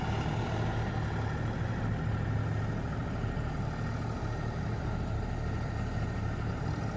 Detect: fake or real real